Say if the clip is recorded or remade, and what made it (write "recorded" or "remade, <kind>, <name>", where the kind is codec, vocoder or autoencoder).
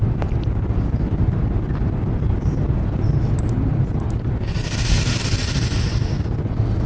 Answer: recorded